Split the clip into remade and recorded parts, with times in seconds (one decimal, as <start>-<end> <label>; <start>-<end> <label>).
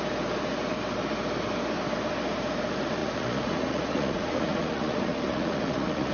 0.0-3.0 recorded; 3.0-6.1 remade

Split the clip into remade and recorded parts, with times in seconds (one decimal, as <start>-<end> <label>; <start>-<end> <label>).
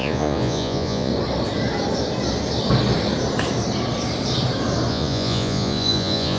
0.0-1.1 remade; 1.1-4.9 recorded; 4.9-6.4 remade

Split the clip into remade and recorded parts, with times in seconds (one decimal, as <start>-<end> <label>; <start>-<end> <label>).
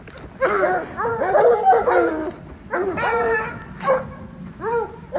0.0-5.2 recorded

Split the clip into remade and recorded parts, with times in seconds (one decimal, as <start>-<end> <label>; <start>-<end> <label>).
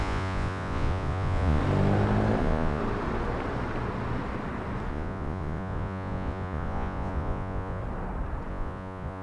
0.0-1.6 remade; 1.6-2.4 recorded; 2.4-2.8 remade; 2.8-4.9 recorded; 4.9-7.8 remade; 7.8-8.5 recorded; 8.5-9.2 remade